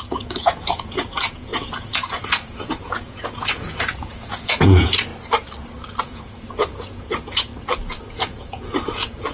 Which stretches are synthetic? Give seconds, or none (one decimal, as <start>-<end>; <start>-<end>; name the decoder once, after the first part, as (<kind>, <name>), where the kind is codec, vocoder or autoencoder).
0.0-5.1 (vocoder, Vocos); 6.0-7.5; 8.1-9.3